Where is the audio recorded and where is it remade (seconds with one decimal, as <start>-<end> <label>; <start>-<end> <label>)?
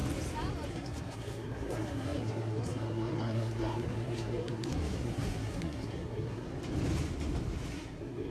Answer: 0.0-0.7 recorded; 0.7-6.5 remade; 6.5-7.7 recorded; 7.7-8.3 remade